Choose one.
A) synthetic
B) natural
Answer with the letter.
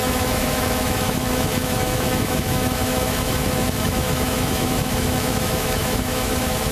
A